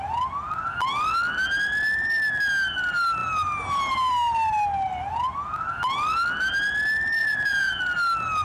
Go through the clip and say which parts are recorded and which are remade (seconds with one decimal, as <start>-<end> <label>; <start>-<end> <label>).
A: 0.0-7.2 recorded; 7.2-7.8 remade; 7.8-8.4 recorded